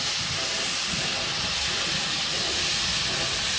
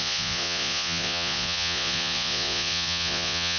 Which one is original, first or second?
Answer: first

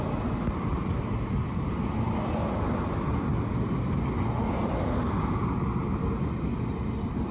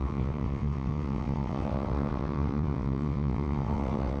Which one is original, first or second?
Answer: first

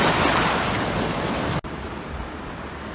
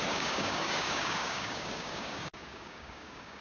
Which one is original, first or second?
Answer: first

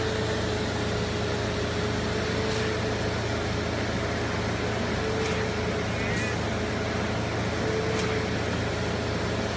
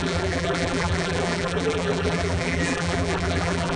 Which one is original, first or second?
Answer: first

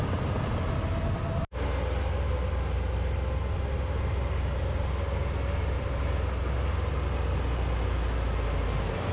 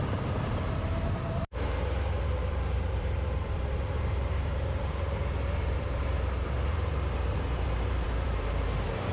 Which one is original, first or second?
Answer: first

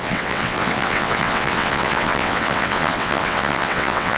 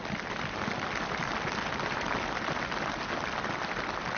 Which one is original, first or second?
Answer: second